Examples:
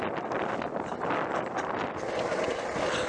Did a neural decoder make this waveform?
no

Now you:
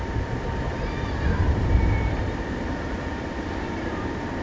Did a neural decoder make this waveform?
yes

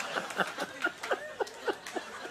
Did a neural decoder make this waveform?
no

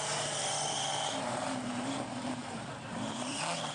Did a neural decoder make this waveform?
yes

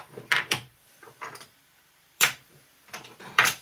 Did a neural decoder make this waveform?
yes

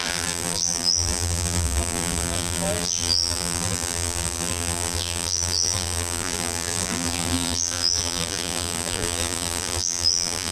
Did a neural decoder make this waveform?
yes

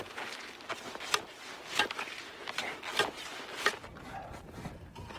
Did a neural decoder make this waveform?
no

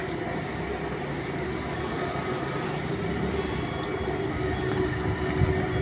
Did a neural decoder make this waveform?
no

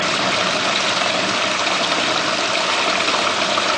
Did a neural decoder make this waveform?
yes